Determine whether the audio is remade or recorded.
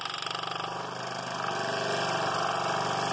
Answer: recorded